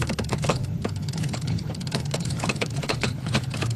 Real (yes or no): no